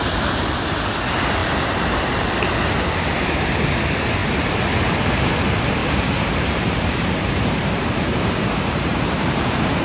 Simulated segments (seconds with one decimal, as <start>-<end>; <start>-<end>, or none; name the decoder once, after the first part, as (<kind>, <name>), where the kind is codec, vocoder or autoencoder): 1.4-2.3 (vocoder, BigVGAN v2); 4.2-5.1; 5.8-9.4